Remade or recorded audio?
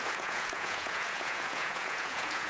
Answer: remade